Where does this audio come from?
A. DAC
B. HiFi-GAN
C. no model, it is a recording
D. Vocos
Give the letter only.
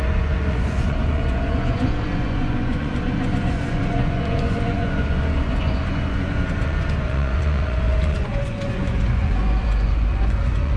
D